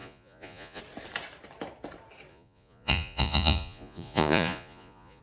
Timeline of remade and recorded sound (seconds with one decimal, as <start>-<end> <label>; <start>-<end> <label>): 0.0-0.8 remade; 0.8-2.3 recorded; 2.3-5.2 remade